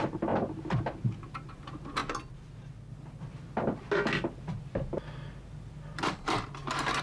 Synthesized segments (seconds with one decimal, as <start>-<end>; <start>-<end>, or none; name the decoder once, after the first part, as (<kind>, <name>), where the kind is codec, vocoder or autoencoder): none

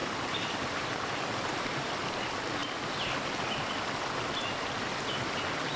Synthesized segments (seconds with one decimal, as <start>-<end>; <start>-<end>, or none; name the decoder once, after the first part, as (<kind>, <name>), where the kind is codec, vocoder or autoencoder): 0.0-1.9 (vocoder, BigVGAN v2)

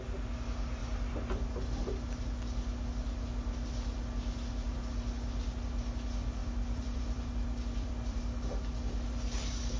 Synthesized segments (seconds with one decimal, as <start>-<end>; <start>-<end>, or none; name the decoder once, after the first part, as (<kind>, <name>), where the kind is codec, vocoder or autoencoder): 6.4-8.2 (vocoder, BigVGAN v2)